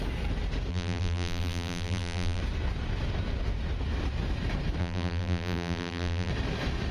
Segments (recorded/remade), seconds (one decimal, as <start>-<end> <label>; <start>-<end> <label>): 0.0-0.7 recorded; 0.7-2.4 remade; 2.4-4.8 recorded; 4.8-6.3 remade; 6.3-6.9 recorded